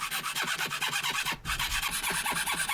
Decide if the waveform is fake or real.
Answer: real